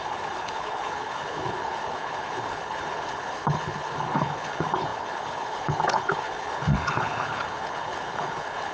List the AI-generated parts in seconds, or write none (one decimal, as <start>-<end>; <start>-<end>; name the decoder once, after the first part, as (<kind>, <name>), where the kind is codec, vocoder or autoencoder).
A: 0.0-8.7 (codec, HILCodec)